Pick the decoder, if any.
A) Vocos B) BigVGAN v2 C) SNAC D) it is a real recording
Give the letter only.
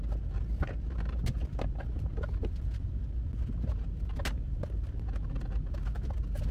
D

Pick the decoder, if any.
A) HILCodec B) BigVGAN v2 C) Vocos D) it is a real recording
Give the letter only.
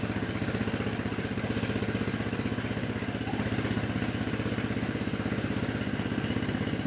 D